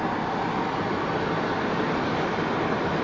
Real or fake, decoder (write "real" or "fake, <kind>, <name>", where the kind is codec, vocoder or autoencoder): real